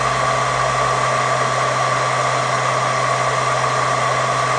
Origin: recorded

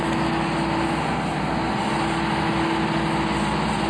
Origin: recorded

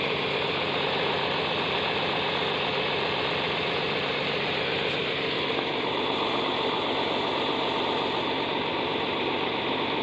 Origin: recorded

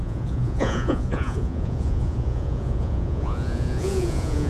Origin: remade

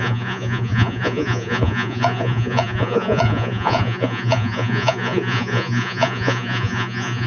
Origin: remade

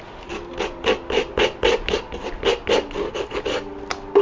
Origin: recorded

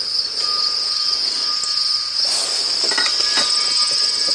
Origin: recorded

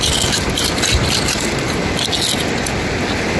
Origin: recorded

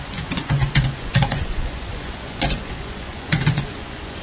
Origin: remade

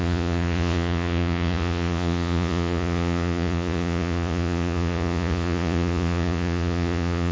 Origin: remade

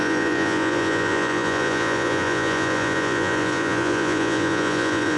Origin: remade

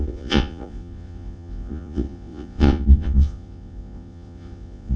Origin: remade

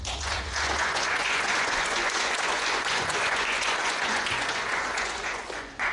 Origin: remade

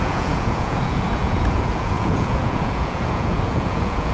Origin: remade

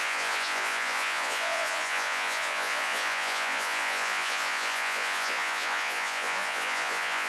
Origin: remade